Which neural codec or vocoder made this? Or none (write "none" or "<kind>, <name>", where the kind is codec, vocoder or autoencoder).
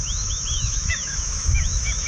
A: autoencoder, DAC-VAE